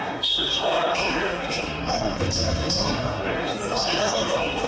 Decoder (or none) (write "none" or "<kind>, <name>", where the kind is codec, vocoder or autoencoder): codec, SNAC